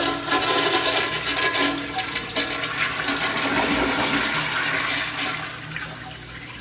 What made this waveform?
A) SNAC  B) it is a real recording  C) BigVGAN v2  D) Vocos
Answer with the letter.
B